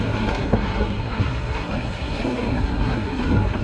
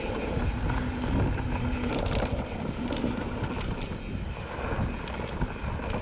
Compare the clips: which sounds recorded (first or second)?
second